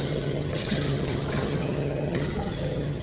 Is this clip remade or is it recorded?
remade